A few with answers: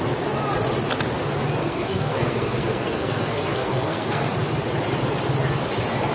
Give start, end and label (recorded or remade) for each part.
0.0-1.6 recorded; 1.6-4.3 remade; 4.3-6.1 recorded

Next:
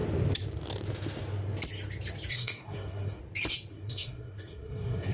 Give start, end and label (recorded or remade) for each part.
0.0-2.3 recorded; 2.3-3.2 remade; 3.2-3.7 recorded; 3.7-5.1 remade

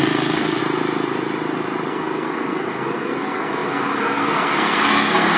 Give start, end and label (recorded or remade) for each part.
0.0-0.6 remade; 0.6-1.9 recorded; 1.9-5.4 remade

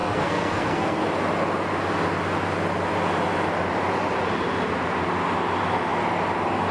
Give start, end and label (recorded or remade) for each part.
0.0-1.0 remade; 1.0-6.7 recorded

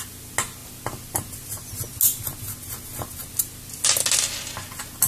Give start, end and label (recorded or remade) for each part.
0.0-5.1 recorded

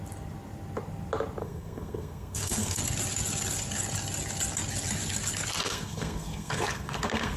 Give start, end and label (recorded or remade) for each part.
0.0-1.4 recorded; 1.4-2.8 remade; 2.8-5.6 recorded; 5.6-7.4 remade